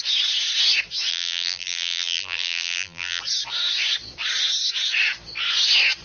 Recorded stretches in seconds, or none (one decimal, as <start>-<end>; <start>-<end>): 0.0-1.1; 3.2-6.0